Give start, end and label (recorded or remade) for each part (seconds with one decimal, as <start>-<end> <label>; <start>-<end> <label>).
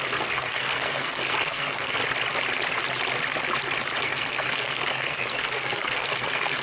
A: 0.0-2.0 remade; 2.0-4.0 recorded; 4.0-6.6 remade